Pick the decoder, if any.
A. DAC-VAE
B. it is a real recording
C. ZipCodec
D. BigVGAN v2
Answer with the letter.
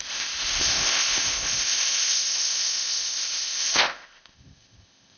C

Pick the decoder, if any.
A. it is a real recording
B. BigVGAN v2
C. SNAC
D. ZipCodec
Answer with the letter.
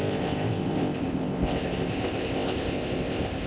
D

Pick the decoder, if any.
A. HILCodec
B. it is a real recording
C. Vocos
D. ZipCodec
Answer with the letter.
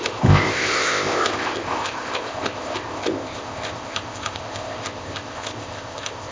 D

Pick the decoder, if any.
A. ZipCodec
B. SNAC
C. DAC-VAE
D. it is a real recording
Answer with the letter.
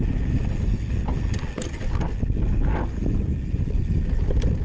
D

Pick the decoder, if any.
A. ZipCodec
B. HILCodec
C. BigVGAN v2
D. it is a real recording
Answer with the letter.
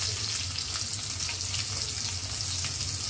D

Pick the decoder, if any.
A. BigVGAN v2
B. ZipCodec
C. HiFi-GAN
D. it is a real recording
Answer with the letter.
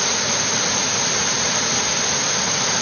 D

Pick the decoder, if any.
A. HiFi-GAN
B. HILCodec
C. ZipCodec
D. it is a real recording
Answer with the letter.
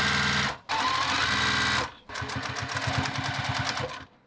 D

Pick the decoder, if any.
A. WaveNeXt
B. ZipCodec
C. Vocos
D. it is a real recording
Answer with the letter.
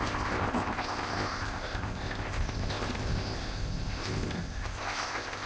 B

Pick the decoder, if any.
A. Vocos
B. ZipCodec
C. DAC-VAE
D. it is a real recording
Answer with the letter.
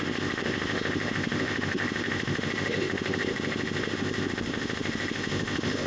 B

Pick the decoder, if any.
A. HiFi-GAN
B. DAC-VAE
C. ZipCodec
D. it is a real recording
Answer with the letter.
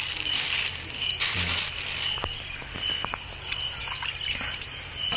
D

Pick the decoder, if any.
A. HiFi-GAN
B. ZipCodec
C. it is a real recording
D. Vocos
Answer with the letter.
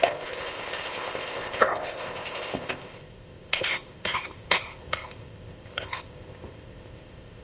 B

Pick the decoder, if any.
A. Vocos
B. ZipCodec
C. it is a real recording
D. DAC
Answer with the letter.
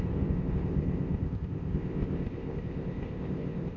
B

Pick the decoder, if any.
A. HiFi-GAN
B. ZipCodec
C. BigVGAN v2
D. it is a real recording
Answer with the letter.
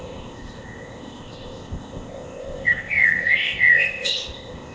B